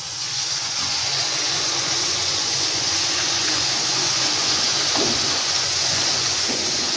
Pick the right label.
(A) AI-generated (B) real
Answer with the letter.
A